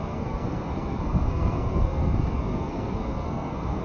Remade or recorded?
remade